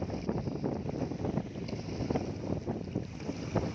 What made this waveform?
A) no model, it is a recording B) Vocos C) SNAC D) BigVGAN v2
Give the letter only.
A